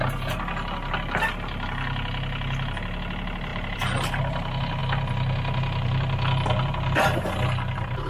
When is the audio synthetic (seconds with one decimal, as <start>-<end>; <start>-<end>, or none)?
3.5-4.2